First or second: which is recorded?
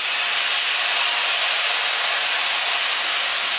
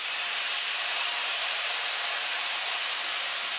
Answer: first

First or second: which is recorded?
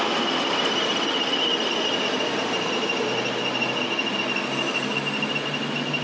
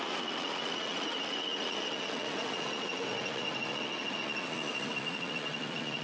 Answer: first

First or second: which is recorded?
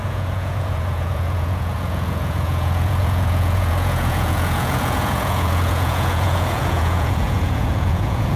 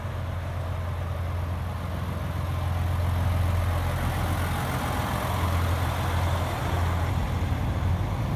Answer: second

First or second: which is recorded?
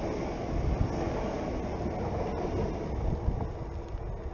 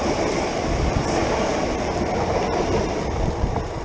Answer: first